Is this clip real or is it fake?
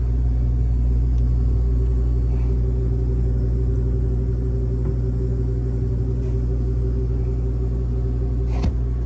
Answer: real